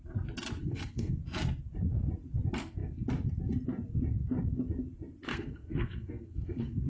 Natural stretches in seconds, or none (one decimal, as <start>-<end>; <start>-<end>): 0.0-0.6; 1.2-5.3